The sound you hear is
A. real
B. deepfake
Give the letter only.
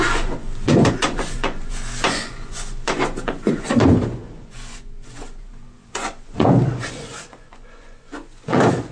B